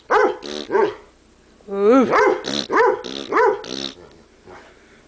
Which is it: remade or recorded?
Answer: recorded